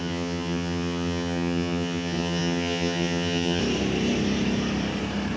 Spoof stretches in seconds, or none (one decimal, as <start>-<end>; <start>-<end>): 0.0-3.6